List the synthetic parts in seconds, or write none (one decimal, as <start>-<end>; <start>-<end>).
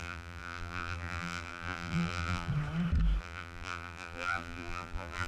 0.0-2.5; 3.2-5.3